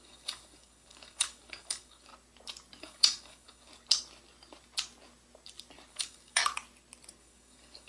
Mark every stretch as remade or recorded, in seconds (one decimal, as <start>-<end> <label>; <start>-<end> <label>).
0.0-2.1 remade; 2.1-2.8 recorded; 2.8-3.7 remade; 3.7-5.9 recorded; 5.9-6.4 remade; 6.4-7.2 recorded; 7.2-7.9 remade